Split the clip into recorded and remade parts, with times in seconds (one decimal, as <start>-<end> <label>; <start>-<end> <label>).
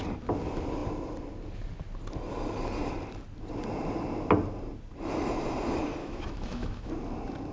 0.0-6.0 recorded; 6.0-6.9 remade; 6.9-7.5 recorded